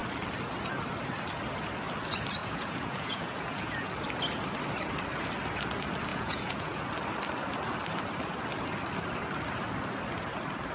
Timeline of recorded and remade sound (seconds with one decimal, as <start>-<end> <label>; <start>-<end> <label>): 0.0-2.4 recorded; 2.4-3.9 remade; 3.9-6.1 recorded; 6.1-6.8 remade; 6.8-10.7 recorded